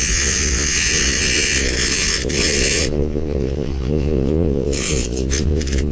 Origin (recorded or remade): remade